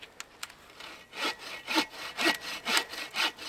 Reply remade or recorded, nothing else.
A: recorded